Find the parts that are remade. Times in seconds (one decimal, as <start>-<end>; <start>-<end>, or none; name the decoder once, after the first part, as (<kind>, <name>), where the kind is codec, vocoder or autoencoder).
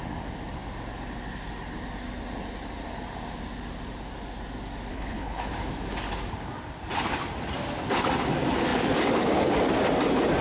4.9-5.5 (codec, HILCodec)